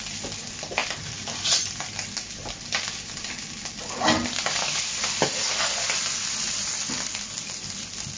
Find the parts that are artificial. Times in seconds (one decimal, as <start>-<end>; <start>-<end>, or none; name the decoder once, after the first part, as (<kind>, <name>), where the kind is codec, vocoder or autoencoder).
none